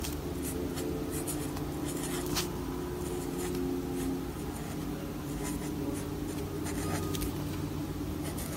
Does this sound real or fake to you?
real